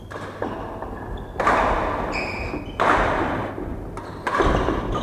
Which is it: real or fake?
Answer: real